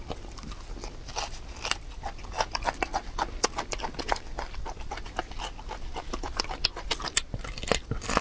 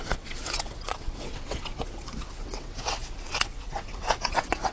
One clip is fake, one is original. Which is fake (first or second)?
second